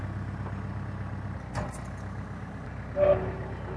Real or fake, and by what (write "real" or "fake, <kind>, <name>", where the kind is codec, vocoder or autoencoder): real